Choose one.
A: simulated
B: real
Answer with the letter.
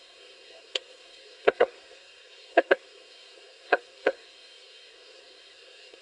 A